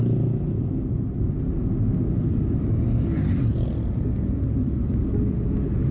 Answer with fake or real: real